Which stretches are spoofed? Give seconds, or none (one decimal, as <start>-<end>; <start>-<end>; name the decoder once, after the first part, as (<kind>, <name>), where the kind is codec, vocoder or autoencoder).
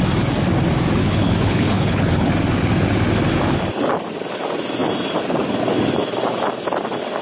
1.0-2.3 (codec, HILCodec)